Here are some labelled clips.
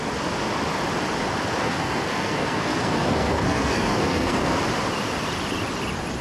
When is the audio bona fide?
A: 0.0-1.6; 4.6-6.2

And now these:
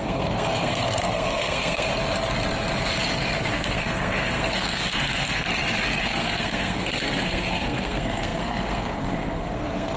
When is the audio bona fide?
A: 1.9-3.5; 5.5-6.0

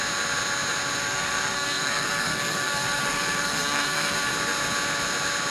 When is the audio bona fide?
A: 0.0-1.0; 4.3-5.5

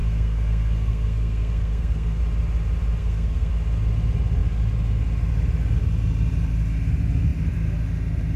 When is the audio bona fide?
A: 2.2-3.0; 3.5-8.4